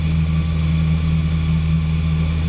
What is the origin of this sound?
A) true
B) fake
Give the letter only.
A